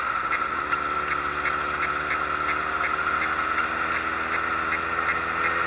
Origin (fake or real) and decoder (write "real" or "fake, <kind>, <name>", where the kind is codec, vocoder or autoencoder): real